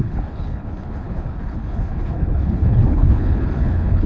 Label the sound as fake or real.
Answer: fake